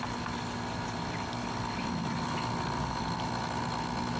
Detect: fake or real real